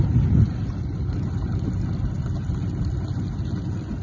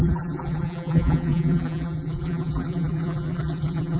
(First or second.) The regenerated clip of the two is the second